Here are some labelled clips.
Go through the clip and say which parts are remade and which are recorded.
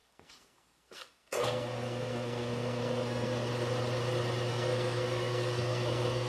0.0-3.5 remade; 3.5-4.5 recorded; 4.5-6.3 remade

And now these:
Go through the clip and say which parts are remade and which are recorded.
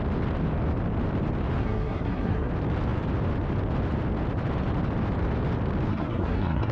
0.0-1.6 recorded; 1.6-2.5 remade; 2.5-5.9 recorded; 5.9-6.7 remade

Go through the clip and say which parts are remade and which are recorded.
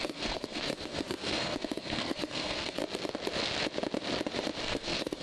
0.0-2.8 remade; 2.8-4.6 recorded; 4.6-5.2 remade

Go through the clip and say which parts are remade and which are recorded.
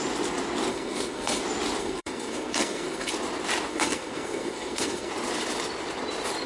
0.0-0.7 recorded; 0.7-1.4 remade; 1.4-1.8 recorded; 1.8-3.1 remade; 3.1-3.7 recorded; 3.7-5.1 remade; 5.1-6.5 recorded